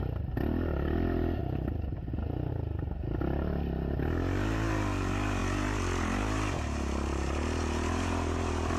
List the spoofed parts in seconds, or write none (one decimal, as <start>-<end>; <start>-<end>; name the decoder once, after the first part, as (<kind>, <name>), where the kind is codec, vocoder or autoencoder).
1.4-2.5 (vocoder, BigVGAN v2)